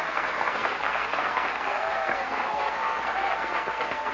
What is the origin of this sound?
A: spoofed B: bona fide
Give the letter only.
A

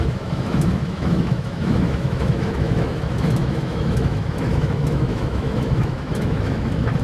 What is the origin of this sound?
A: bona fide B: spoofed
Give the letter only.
B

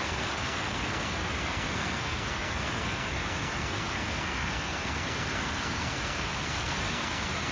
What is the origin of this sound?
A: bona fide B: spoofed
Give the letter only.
B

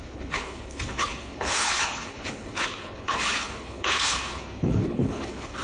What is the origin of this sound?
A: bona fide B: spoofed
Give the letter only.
B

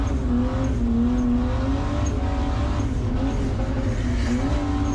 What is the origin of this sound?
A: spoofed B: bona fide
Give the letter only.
B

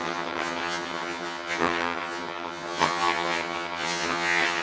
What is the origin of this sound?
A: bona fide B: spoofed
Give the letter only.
B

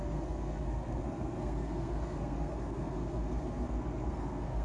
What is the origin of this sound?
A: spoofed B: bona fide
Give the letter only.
A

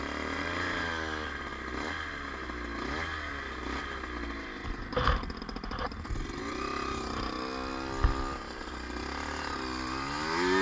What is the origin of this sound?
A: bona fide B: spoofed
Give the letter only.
A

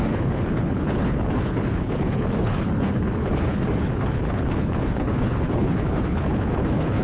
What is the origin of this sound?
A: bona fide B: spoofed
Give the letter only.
B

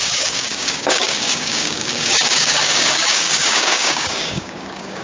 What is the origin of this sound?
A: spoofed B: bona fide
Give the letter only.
A